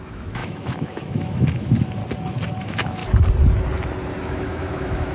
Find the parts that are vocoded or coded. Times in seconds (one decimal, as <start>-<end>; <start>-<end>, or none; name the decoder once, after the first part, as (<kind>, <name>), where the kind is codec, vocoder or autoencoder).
0.0-2.0 (autoencoder, DAC-VAE); 2.6-3.0; 4.3-5.1